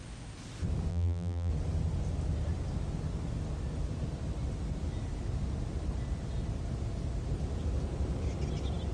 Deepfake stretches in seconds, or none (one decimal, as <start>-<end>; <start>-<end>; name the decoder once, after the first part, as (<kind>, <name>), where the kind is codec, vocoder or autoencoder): 0.9-1.5 (vocoder, BigVGAN v2)